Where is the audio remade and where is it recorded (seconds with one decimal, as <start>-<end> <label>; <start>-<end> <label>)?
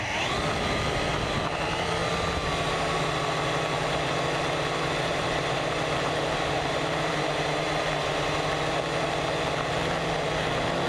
0.0-5.1 recorded; 5.1-8.5 remade; 8.5-10.9 recorded